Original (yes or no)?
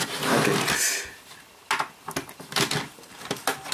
yes